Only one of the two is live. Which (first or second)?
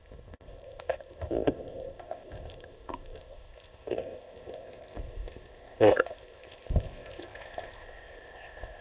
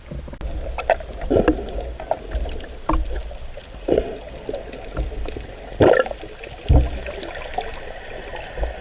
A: second